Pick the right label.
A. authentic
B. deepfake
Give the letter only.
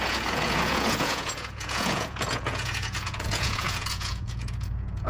B